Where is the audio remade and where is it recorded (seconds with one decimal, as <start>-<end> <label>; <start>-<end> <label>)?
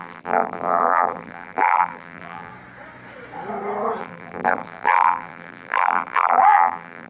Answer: 0.0-2.5 remade; 2.5-4.0 recorded; 4.0-7.1 remade